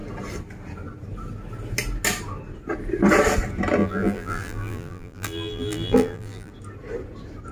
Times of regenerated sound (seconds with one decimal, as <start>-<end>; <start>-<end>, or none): 3.8-6.5